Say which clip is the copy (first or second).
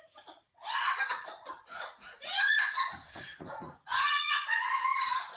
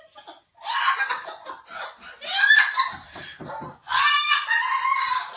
first